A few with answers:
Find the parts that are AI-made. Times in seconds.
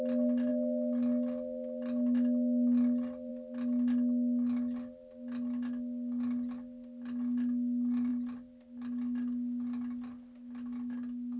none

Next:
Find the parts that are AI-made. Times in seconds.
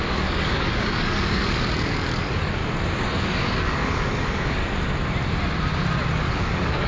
0.0-2.6; 3.2-4.6; 6.2-6.9